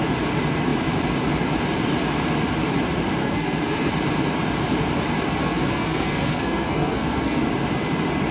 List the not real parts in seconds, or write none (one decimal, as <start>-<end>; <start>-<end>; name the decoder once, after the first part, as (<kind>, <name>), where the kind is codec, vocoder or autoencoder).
3.2-3.9 (codec, SNAC); 5.3-7.4

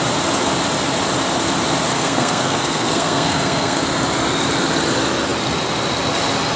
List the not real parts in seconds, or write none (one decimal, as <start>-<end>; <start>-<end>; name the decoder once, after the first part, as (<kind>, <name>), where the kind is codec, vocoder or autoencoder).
1.9-3.8 (codec, SNAC)

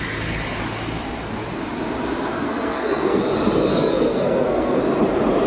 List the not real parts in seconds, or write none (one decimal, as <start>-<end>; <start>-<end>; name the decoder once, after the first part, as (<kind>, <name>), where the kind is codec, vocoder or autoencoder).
2.3-3.2 (codec, SNAC); 3.7-4.8

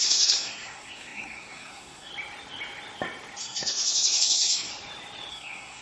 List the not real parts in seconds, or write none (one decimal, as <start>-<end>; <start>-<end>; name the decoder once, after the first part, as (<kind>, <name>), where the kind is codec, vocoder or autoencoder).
0.0-2.1 (codec, SNAC); 3.4-4.7; 5.3-5.8